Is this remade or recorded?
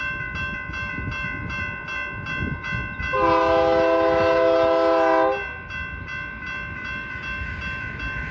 recorded